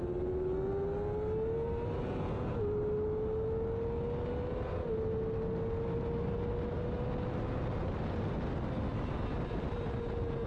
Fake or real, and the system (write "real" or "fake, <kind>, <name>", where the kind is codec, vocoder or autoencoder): real